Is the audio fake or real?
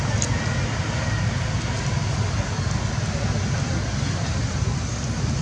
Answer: real